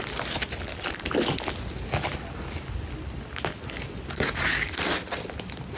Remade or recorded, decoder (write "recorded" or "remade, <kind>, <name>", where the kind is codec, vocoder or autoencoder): recorded